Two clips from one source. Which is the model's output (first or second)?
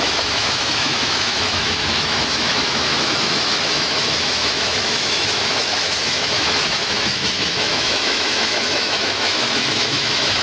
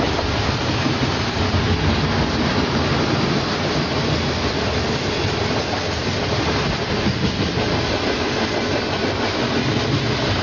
first